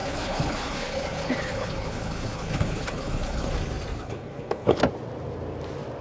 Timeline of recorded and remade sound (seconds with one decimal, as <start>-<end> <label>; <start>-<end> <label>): 0.0-3.5 remade; 3.5-3.9 recorded; 3.9-4.8 remade; 4.8-6.0 recorded